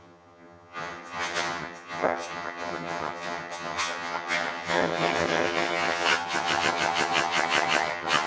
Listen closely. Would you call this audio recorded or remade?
remade